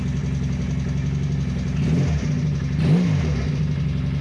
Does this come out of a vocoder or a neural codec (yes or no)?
no